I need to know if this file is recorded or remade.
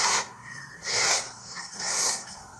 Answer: remade